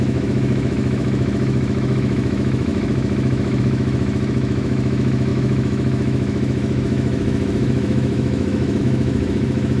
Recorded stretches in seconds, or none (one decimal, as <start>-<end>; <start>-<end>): none